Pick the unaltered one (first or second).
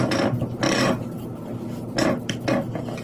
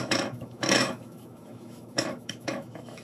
first